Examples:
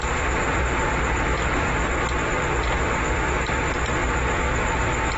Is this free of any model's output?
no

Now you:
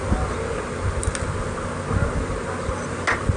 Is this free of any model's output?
yes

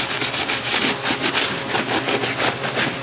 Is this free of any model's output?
yes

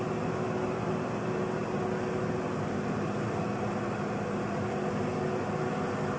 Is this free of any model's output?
yes